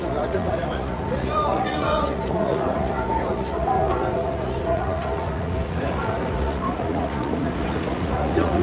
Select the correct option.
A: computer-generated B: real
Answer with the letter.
A